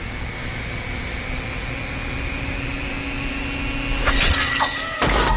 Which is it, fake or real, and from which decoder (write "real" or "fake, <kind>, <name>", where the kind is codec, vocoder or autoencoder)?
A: real